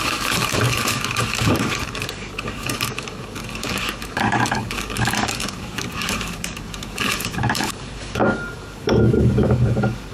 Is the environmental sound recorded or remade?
remade